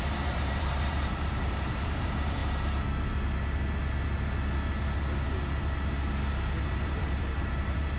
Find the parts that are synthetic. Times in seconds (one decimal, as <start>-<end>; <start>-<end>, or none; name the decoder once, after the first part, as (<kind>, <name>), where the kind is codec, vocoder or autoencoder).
0.0-2.4 (vocoder, BigVGAN v2); 6.7-8.0